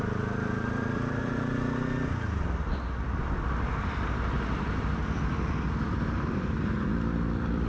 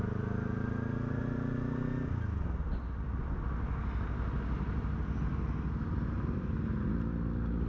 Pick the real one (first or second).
second